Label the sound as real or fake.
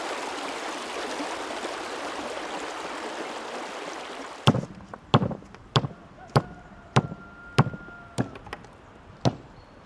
real